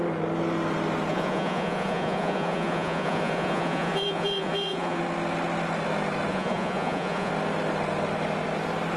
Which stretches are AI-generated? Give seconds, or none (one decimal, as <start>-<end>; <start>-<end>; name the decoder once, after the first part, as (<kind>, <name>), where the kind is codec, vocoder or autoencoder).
1.1-5.0 (vocoder, Vocos); 6.3-7.3